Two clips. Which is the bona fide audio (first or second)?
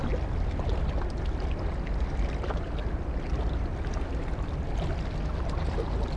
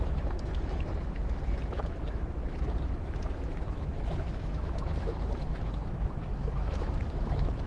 first